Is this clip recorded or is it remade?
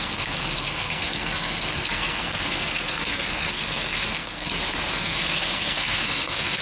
remade